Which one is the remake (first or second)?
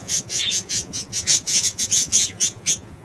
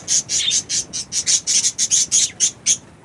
first